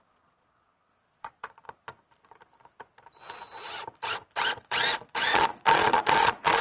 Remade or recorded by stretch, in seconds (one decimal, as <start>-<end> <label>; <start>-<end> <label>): 0.0-1.9 remade; 1.9-4.6 recorded; 4.6-6.6 remade